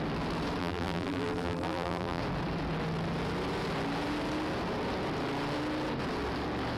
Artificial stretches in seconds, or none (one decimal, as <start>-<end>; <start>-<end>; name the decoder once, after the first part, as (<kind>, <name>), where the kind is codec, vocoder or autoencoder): 0.6-2.2 (vocoder, BigVGAN v2)